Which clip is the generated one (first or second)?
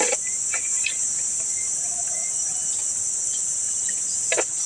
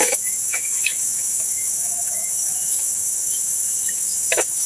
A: second